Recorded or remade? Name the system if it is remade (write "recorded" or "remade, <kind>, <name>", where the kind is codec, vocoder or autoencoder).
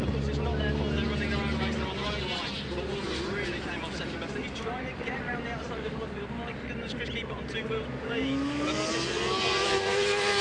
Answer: recorded